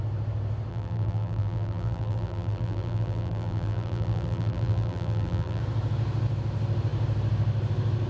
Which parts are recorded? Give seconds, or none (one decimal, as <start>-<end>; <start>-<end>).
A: 0.0-0.7; 5.6-8.1